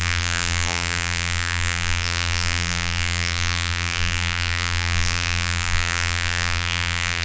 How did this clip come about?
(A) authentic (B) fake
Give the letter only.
B